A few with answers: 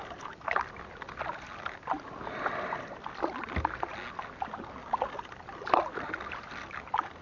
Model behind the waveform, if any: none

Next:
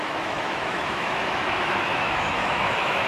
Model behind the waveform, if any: autoencoder, DAC-VAE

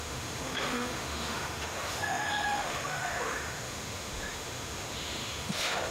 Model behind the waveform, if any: autoencoder, DAC-VAE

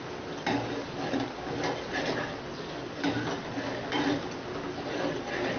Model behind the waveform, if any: none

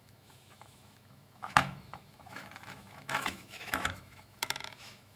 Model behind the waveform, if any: autoencoder, DAC-VAE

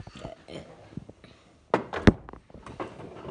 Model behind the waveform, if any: none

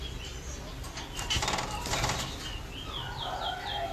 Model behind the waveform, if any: none